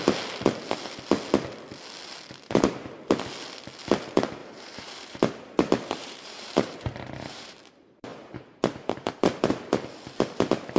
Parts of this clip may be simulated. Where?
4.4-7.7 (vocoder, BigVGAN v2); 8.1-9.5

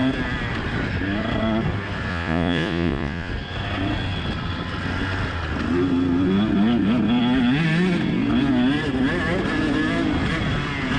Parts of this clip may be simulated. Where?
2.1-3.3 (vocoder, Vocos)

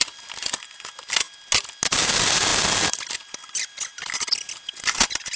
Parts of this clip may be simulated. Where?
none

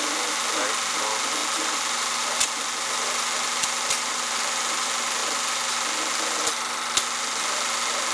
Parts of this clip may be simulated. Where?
1.4-4.6 (vocoder, BigVGAN v2)